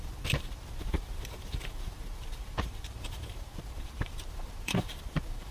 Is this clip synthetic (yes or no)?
yes